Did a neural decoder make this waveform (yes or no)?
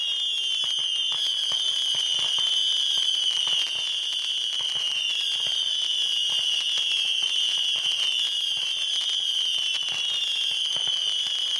no